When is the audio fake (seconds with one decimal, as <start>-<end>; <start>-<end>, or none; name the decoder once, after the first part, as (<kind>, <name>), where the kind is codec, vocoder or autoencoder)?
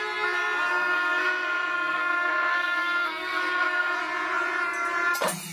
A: 0.7-4.0 (codec, SNAC)